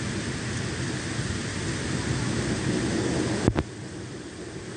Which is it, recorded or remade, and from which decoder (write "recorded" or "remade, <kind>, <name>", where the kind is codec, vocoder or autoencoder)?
recorded